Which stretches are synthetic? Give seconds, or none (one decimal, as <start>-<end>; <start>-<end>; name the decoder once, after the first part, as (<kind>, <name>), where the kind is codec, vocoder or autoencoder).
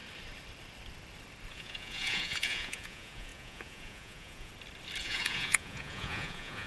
1.5-4.5 (vocoder, Vocos); 5.0-6.7